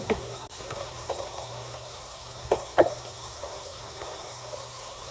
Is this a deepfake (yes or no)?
yes